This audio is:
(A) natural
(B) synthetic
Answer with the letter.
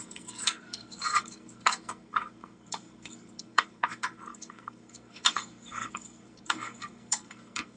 B